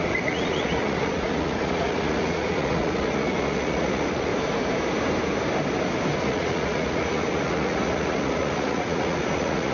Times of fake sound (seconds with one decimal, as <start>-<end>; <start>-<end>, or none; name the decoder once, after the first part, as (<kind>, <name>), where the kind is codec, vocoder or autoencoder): 0.0-4.3 (vocoder, Vocos); 6.2-9.7